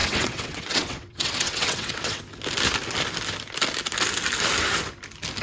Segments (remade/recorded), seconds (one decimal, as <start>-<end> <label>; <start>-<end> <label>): 0.0-2.2 remade; 2.2-5.4 recorded

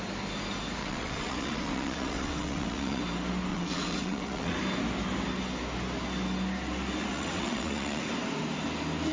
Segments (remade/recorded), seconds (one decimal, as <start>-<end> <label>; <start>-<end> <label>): 0.0-0.8 recorded; 0.8-3.0 remade; 3.0-3.5 recorded; 3.5-4.6 remade; 4.6-7.1 recorded; 7.1-8.0 remade; 8.0-9.1 recorded